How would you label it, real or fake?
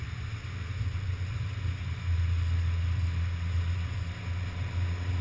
real